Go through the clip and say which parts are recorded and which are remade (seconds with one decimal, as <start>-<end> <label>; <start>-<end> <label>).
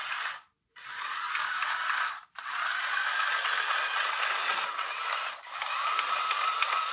0.0-6.9 recorded